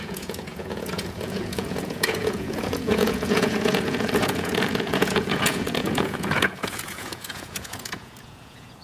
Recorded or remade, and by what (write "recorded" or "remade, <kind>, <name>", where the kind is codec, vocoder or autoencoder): remade, vocoder, Vocos